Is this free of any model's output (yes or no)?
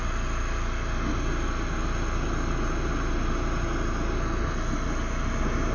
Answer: yes